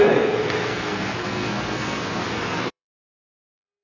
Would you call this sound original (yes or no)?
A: no